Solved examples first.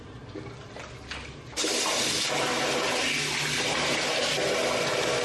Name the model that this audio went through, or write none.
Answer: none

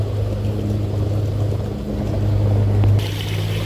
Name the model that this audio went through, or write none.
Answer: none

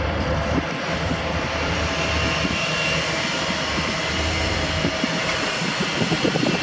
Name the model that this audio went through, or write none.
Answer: vocoder, BigVGAN v2